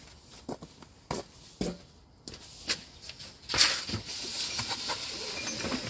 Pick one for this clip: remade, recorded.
recorded